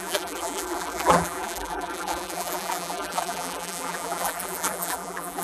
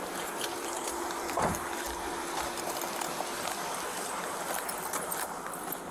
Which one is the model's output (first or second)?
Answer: first